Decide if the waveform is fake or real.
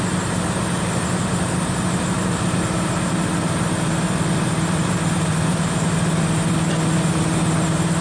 real